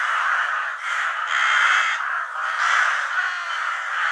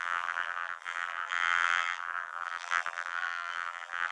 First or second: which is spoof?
second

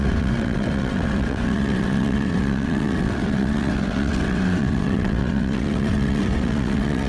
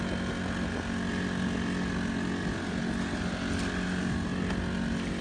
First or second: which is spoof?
first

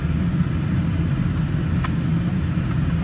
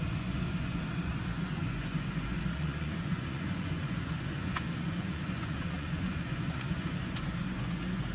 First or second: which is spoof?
second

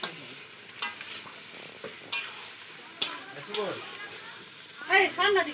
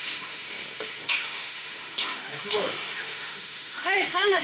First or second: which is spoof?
second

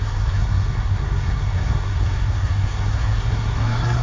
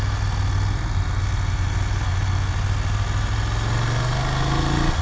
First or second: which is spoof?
first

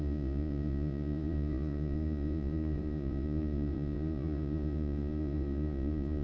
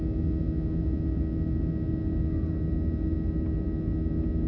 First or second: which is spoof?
first